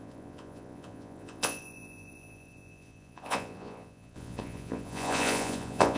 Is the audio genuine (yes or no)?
no